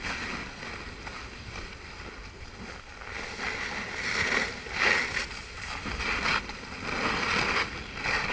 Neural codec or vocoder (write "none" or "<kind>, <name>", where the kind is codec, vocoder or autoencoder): none